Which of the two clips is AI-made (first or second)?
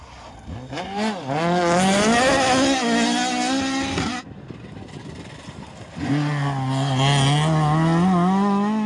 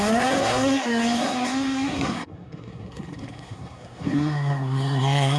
second